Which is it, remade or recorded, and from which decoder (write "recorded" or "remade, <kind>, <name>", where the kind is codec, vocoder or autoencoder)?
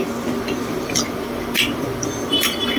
remade, vocoder, BigVGAN v2